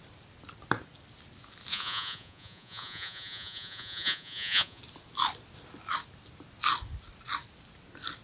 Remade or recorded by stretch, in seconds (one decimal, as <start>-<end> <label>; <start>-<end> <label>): 0.0-1.7 recorded; 1.7-4.8 remade; 4.8-8.2 recorded

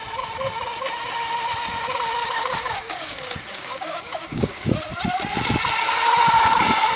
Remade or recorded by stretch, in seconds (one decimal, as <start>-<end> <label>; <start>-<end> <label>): 0.0-2.2 recorded; 2.2-4.7 remade; 4.7-7.0 recorded

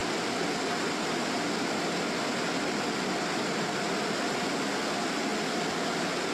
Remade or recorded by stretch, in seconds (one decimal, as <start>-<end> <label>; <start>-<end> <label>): 0.0-6.3 recorded

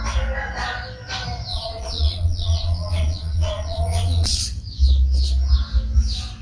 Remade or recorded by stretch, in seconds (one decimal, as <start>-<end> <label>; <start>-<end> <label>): 0.0-1.5 recorded; 1.5-4.4 remade; 4.4-6.4 recorded

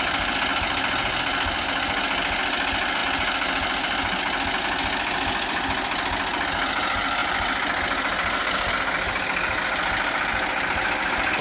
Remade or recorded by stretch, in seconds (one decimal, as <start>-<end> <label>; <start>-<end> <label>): 0.0-11.4 recorded